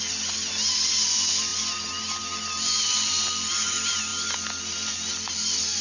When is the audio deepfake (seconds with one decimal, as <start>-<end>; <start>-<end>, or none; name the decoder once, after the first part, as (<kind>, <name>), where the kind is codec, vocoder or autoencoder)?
none